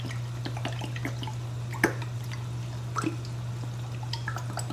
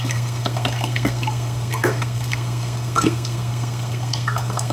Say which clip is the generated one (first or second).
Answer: second